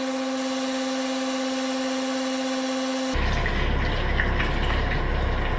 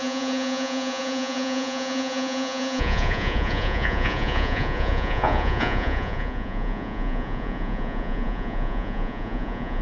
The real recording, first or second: first